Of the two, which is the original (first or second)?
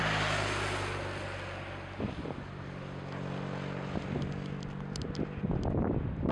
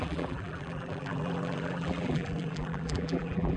first